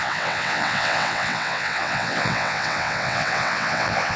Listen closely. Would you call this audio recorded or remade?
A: remade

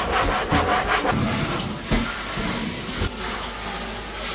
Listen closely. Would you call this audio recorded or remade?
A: recorded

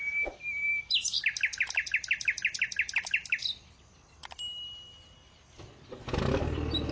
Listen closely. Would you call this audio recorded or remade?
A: recorded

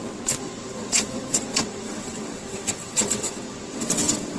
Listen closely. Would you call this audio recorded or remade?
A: remade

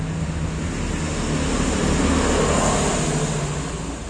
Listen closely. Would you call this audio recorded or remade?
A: recorded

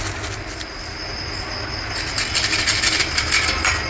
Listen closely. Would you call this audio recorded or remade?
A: recorded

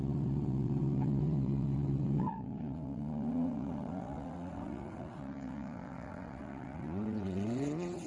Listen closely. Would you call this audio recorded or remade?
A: remade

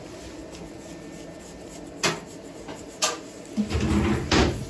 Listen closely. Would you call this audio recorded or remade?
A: recorded